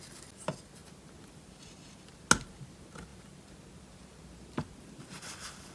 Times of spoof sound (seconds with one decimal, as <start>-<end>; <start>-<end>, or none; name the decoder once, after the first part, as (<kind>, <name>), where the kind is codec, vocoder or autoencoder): none